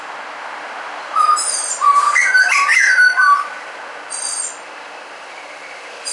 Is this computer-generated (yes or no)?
no